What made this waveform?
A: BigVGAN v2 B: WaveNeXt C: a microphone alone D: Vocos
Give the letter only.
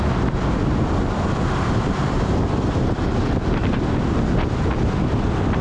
C